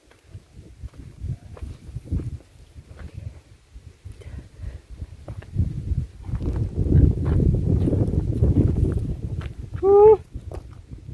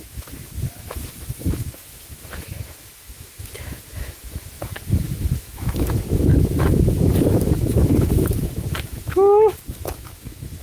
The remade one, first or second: second